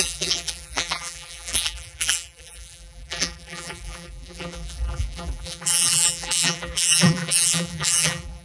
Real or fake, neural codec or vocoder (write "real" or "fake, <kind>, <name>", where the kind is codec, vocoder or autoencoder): fake, vocoder, BigVGAN v2